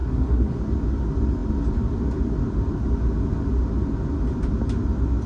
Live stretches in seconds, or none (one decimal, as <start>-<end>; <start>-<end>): 0.6-5.3